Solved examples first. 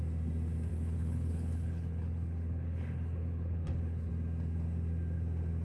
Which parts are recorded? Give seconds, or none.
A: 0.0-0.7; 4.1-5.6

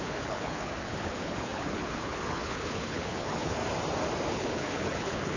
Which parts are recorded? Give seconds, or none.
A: 3.6-4.3